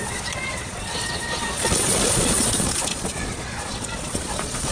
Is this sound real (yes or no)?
no